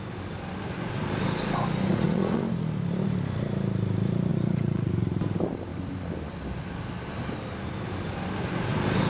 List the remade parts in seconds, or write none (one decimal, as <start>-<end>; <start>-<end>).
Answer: 1.9-2.4; 4.3-4.9